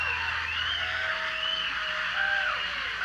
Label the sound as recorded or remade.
recorded